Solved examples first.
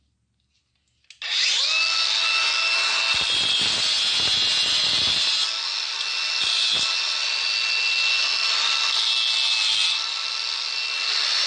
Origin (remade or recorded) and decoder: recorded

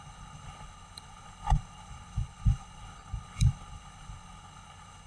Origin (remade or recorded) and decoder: remade, codec, HILCodec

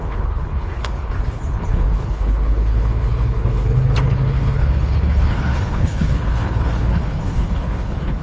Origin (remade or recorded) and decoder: remade, codec, HILCodec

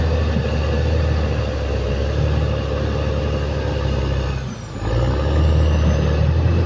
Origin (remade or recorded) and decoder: recorded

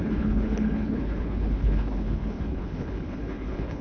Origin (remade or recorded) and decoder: remade, codec, HILCodec